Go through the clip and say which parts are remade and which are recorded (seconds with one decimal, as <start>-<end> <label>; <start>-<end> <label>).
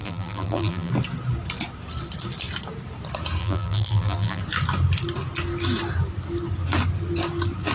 0.0-0.9 remade; 0.9-3.4 recorded; 3.4-4.4 remade; 4.4-7.7 recorded